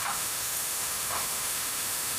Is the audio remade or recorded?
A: remade